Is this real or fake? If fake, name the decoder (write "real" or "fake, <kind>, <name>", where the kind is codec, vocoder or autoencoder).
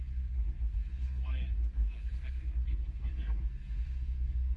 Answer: fake, codec, SNAC